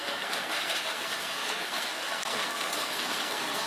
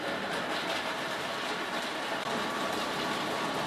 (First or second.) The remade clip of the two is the first